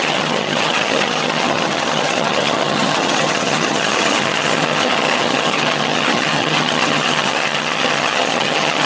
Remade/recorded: remade